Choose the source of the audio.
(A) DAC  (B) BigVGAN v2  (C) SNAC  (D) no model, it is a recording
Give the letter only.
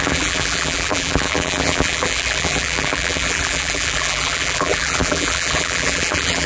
B